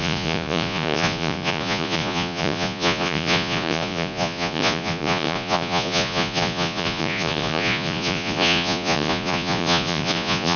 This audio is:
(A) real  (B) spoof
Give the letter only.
B